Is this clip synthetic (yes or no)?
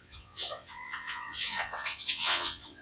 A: yes